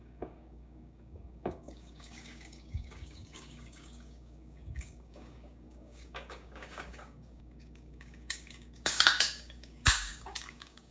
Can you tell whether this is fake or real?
fake